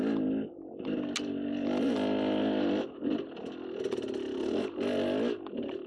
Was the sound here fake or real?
real